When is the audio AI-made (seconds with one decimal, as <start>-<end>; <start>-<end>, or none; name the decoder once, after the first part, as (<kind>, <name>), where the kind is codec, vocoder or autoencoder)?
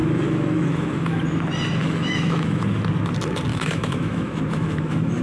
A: 0.0-1.2 (autoencoder, DAC-VAE); 1.8-2.8; 3.5-5.2